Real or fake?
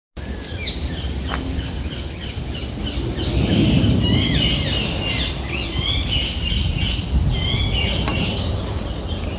real